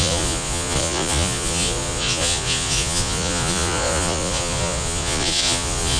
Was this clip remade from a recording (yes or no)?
yes